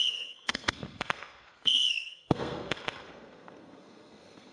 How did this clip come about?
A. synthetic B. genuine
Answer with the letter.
A